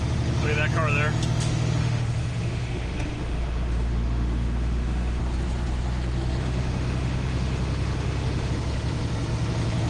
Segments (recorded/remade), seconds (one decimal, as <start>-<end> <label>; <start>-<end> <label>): 0.0-1.8 recorded; 1.8-5.2 remade; 5.2-6.4 recorded; 6.4-8.5 remade; 8.5-9.9 recorded